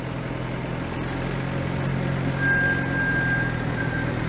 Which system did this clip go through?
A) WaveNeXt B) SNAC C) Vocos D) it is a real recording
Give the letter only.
D